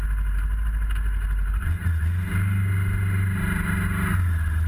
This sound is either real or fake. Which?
real